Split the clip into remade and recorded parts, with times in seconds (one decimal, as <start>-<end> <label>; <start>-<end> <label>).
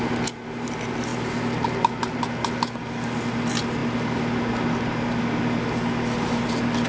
0.0-6.9 recorded